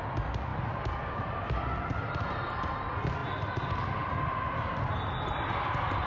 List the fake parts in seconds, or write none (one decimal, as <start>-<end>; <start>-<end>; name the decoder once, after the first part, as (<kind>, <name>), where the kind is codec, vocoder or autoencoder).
none